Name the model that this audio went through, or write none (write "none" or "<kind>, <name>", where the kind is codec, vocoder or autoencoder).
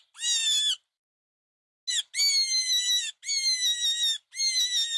none